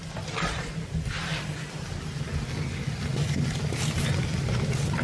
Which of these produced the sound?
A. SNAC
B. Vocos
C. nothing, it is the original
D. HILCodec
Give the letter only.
C